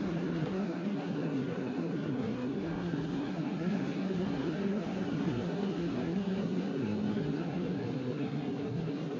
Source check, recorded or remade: remade